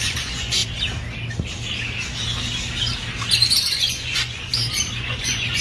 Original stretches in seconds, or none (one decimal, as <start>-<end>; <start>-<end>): 0.6-3.7; 4.5-5.0

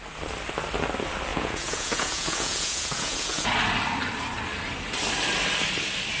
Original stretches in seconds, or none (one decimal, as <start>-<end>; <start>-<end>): 0.0-1.3; 3.5-6.2

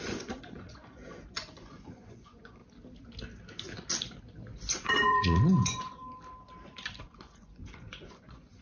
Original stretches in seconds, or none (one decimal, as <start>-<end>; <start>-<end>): 2.6-4.7; 6.0-7.0

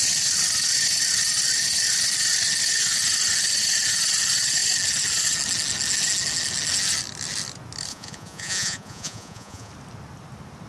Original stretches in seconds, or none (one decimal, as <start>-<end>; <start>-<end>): 0.0-7.9; 9.7-10.7

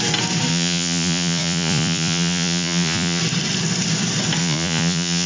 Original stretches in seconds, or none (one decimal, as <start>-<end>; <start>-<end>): 0.0-0.5; 3.2-4.4

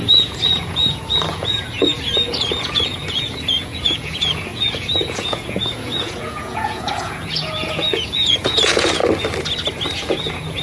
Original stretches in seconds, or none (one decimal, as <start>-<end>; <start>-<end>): 9.0-9.9